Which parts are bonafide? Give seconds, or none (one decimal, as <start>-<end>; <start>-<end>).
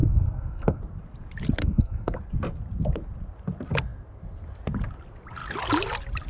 0.8-1.6; 2.2-6.3